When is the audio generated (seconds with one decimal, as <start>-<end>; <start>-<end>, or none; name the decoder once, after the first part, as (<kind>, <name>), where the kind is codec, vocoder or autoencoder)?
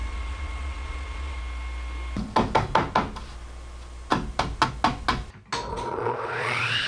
0.0-1.4 (vocoder, Vocos); 5.7-6.9